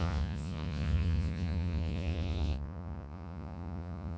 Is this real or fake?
fake